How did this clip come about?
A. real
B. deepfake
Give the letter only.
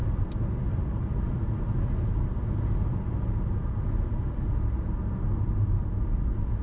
A